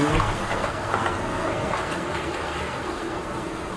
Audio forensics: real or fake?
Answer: fake